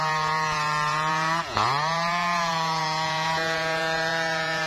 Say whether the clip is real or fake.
fake